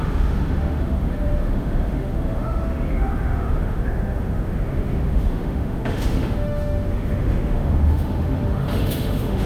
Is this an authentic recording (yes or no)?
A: no